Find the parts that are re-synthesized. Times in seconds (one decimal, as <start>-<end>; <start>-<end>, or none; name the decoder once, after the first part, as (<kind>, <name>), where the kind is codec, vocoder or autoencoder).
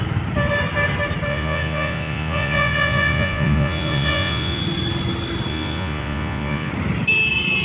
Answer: 1.3-4.6 (vocoder, Vocos); 5.5-6.7